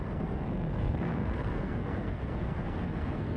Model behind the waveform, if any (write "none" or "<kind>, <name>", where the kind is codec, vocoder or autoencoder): codec, SNAC